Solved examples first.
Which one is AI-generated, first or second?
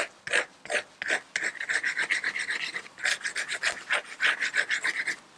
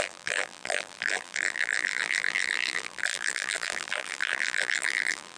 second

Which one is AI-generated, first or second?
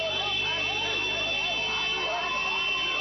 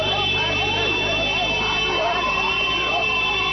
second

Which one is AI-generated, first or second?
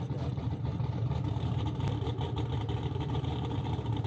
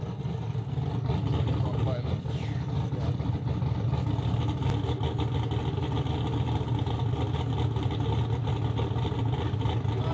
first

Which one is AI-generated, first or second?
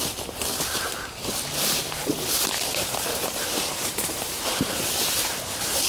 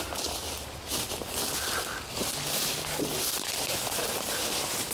first